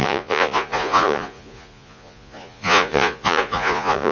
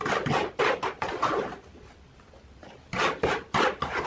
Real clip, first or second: second